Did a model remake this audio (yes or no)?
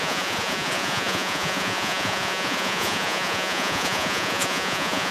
yes